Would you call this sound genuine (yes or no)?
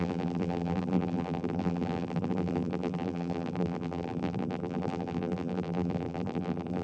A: no